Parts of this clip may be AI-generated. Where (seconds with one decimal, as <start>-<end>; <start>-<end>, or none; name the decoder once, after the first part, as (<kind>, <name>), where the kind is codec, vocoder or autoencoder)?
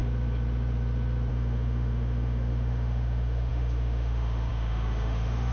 1.3-5.5 (autoencoder, DAC-VAE)